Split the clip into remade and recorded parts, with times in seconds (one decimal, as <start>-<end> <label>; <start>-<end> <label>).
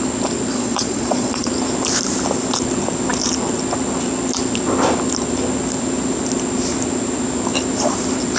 0.0-0.5 recorded; 0.5-1.5 remade; 1.5-8.4 recorded